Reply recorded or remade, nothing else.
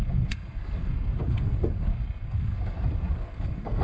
remade